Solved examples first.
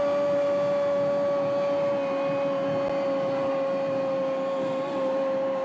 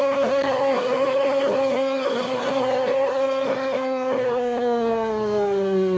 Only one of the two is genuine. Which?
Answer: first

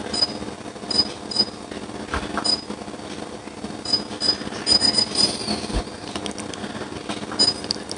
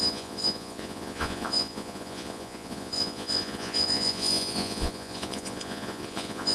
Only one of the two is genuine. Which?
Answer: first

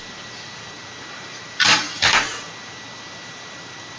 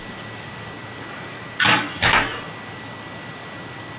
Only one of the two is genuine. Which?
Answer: second